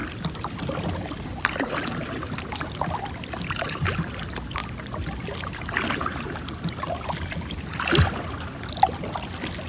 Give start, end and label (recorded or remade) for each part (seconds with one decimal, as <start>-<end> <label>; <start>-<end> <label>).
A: 0.0-9.7 recorded